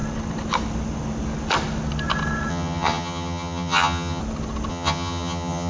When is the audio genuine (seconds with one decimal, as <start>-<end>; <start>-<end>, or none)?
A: 0.0-2.5; 4.2-4.7